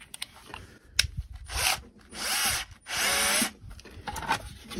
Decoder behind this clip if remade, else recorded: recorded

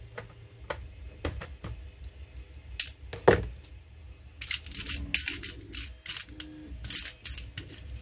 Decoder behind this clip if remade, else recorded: recorded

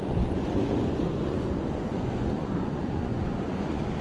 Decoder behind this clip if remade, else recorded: remade, vocoder, Vocos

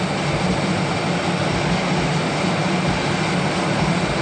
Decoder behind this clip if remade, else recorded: recorded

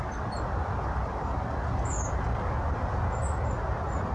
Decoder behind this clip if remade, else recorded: recorded